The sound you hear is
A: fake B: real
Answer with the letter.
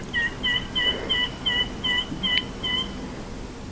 B